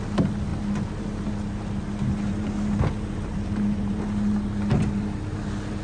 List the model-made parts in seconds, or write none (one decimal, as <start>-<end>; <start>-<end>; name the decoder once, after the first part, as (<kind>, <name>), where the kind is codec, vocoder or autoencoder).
none